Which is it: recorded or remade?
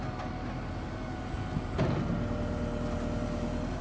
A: recorded